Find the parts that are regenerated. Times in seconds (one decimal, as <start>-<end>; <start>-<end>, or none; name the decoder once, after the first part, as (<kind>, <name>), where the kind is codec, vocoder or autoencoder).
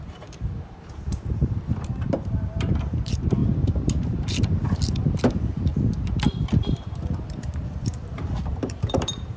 0.0-5.7 (vocoder, BigVGAN v2); 6.4-9.4